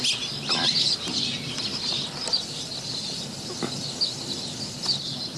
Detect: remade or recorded recorded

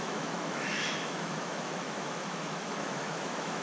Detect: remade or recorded remade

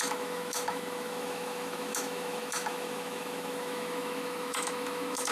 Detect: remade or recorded remade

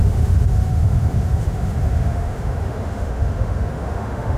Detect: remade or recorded remade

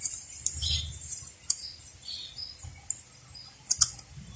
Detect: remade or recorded recorded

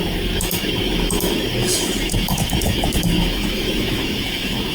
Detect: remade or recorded remade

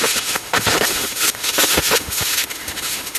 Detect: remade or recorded remade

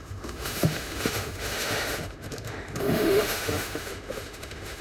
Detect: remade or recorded remade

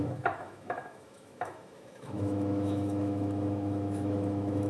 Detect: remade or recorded remade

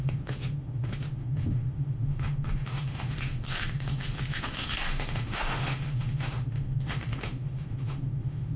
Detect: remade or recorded remade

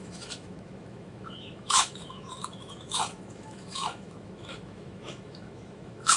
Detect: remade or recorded remade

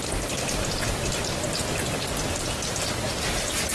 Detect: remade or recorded recorded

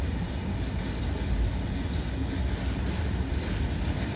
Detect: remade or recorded recorded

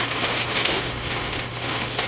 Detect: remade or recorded remade